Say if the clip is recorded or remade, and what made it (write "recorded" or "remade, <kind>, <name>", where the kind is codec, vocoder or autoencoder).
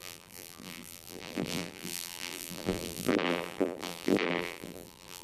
remade, vocoder, BigVGAN v2